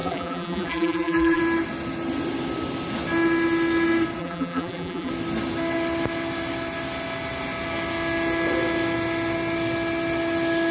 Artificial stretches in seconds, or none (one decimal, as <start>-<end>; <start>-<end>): 0.0-1.4; 4.2-5.1